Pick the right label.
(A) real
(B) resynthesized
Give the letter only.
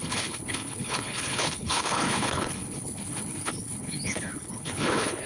B